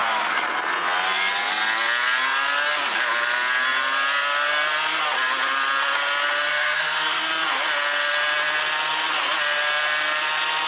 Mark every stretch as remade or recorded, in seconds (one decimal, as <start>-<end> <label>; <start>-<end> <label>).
0.0-6.5 recorded; 6.5-7.3 remade; 7.3-10.7 recorded